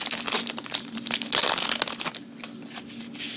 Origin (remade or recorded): recorded